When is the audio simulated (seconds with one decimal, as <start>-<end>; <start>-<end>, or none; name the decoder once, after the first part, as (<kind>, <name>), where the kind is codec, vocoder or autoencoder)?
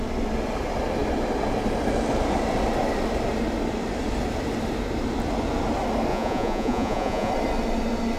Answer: 6.1-7.3 (vocoder, Vocos)